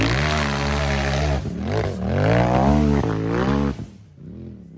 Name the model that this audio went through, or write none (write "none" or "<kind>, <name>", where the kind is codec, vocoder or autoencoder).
none